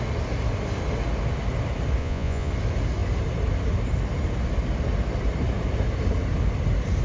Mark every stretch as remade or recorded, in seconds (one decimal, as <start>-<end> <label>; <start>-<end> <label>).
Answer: 0.0-2.0 recorded; 2.0-2.5 remade; 2.5-7.0 recorded